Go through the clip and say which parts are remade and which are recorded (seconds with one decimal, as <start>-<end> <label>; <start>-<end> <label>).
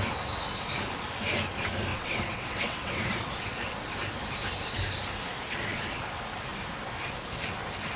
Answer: 0.0-1.9 recorded; 1.9-3.3 remade; 3.3-8.0 recorded